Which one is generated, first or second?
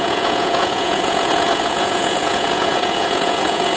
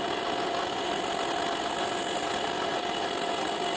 first